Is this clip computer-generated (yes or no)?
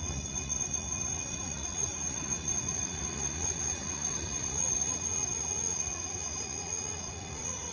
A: yes